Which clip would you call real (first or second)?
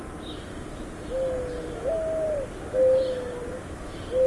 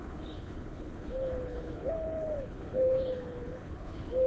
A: first